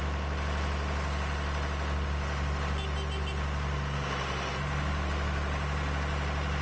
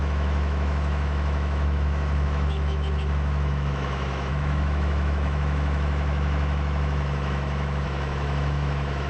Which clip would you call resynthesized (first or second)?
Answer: second